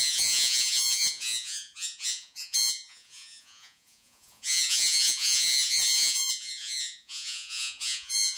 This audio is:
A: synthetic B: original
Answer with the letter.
A